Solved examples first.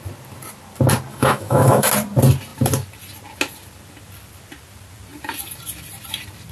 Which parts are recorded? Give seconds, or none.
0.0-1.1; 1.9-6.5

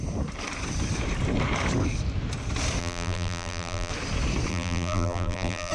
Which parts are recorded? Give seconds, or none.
0.0-2.8; 3.9-4.5

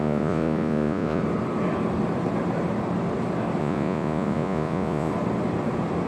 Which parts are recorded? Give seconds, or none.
1.2-3.6; 5.1-6.1